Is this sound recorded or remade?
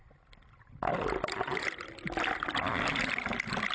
recorded